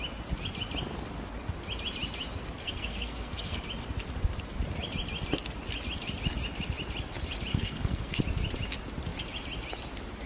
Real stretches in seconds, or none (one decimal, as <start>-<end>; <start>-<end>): 0.0-2.6; 3.6-7.5; 8.2-10.3